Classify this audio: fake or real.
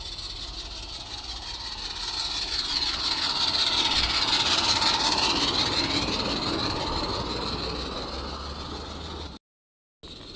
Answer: real